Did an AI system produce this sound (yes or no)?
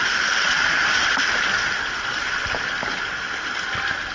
no